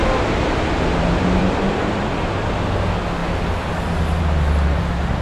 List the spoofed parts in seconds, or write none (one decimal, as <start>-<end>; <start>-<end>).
1.4-2.0